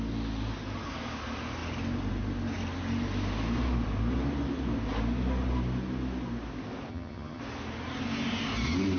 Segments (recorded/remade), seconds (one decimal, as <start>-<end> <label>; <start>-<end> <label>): 0.0-6.9 recorded; 6.9-7.4 remade; 7.4-9.0 recorded